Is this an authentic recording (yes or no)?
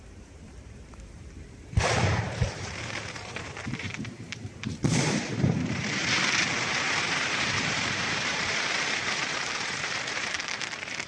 no